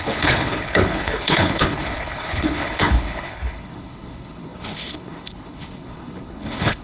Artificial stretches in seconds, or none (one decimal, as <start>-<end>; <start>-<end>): 0.0-6.8